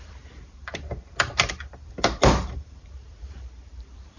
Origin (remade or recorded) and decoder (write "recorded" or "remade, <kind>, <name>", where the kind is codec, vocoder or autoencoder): remade, vocoder, BigVGAN v2